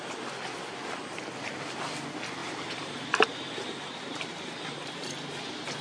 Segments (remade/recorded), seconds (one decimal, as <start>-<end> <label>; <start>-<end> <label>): 0.0-2.4 recorded; 2.4-4.9 remade; 4.9-5.8 recorded